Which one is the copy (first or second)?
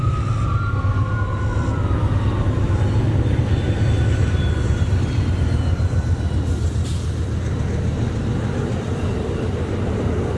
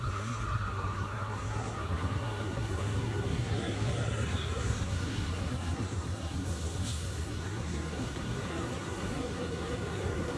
second